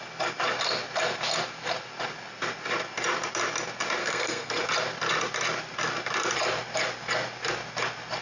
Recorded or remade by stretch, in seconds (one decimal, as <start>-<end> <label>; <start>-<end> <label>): 0.0-4.0 recorded; 4.0-4.6 remade; 4.6-8.2 recorded

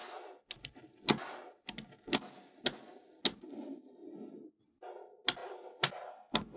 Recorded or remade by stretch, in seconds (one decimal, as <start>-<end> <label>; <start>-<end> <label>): 0.0-6.6 recorded

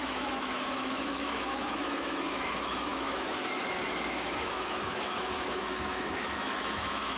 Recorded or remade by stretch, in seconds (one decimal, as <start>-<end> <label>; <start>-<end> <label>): 0.0-7.2 remade